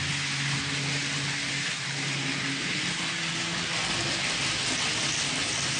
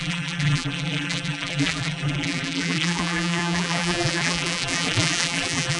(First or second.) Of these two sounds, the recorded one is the first